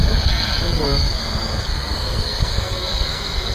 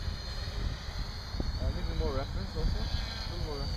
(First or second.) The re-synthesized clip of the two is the first